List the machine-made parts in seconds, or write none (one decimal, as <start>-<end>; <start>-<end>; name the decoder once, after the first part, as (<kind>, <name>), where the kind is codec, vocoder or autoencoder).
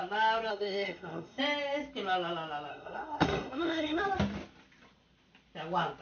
0.5-1.4 (codec, SNAC); 2.7-4.0